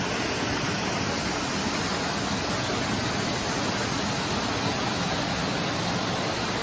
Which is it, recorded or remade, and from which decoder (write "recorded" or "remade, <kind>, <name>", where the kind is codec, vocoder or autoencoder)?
recorded